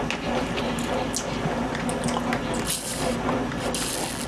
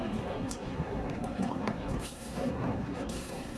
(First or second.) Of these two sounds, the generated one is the second